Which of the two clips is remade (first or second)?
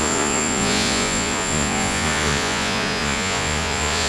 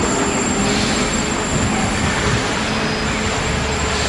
first